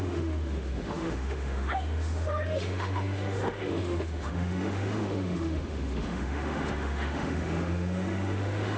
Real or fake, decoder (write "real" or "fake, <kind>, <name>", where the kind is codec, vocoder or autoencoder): fake, autoencoder, DAC-VAE